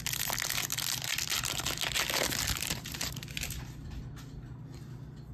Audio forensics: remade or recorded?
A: recorded